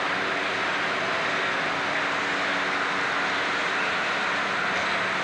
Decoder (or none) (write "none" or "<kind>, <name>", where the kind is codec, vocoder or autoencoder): none